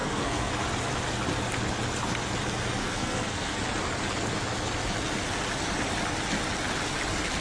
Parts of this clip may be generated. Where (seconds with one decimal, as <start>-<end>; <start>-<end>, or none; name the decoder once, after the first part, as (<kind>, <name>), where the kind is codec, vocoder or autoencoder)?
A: 0.0-0.5 (codec, SNAC); 2.8-3.6